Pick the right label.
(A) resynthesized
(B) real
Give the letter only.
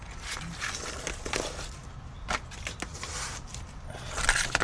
B